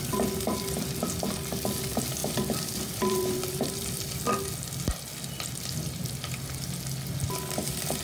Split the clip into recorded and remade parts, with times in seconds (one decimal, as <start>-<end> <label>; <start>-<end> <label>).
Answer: 0.0-2.2 recorded; 2.2-4.1 remade; 4.1-8.0 recorded